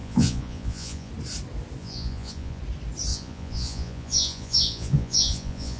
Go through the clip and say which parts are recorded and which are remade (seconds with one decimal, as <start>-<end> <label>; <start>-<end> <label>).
0.0-1.1 remade; 1.1-1.8 recorded; 1.8-2.6 remade; 2.6-3.1 recorded; 3.1-5.8 remade

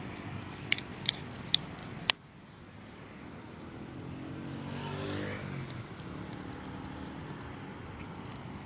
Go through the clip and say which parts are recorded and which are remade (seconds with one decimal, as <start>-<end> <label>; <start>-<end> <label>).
0.0-8.7 recorded

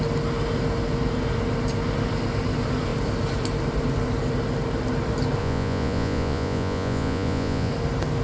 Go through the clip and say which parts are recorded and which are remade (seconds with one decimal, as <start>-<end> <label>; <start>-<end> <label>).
0.0-5.4 recorded; 5.4-7.7 remade; 7.7-8.2 recorded